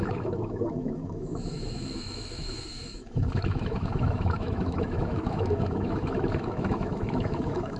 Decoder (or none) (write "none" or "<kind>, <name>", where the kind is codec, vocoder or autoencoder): autoencoder, DAC-VAE